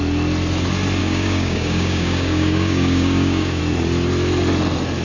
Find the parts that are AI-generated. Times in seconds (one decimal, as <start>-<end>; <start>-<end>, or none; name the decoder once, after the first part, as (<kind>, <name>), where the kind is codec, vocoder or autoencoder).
1.0-3.6 (codec, DAC)